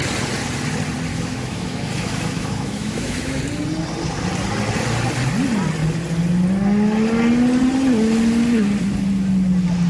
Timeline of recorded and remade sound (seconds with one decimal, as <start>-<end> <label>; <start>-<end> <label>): 0.0-1.1 recorded; 1.1-3.4 remade; 3.4-9.9 recorded